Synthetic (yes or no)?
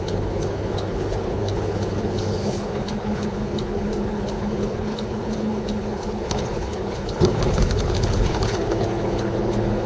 yes